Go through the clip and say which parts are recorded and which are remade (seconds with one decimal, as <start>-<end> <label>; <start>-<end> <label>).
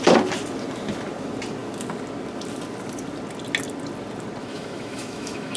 0.0-4.4 recorded; 4.4-5.6 remade